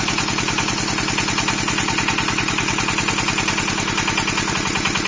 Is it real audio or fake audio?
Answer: real